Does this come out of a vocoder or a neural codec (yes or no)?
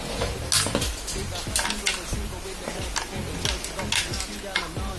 no